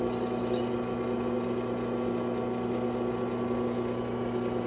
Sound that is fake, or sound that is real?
real